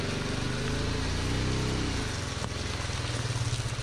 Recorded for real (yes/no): yes